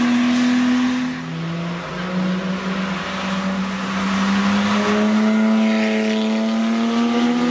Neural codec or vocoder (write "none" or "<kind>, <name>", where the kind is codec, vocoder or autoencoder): none